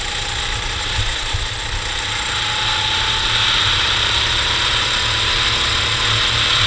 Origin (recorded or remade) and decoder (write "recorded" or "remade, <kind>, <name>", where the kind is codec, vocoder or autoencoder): recorded